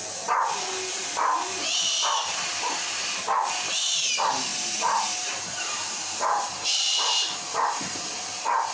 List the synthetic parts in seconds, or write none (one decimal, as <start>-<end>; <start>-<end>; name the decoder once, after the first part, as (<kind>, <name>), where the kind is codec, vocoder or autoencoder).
4.5-7.8 (vocoder, BigVGAN v2)

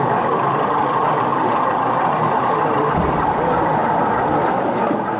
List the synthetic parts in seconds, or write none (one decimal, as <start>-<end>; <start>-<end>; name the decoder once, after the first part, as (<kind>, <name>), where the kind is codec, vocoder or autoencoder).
1.3-2.9 (vocoder, BigVGAN v2)

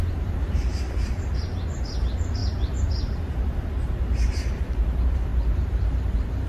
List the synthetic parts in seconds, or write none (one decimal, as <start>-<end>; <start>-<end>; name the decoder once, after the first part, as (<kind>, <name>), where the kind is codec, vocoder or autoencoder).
0.0-0.7 (vocoder, BigVGAN v2); 2.0-2.4; 4.5-6.5

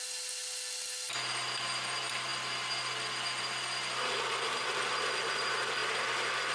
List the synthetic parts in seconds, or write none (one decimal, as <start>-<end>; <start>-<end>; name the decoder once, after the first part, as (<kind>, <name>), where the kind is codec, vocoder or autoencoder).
none